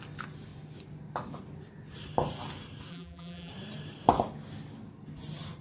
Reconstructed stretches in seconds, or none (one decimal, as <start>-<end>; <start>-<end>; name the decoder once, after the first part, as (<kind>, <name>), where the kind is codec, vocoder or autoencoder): 2.9-3.5 (vocoder, BigVGAN v2)